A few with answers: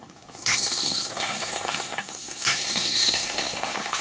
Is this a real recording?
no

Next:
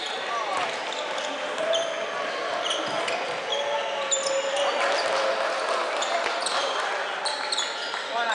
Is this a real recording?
yes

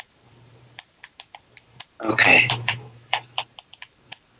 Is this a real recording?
no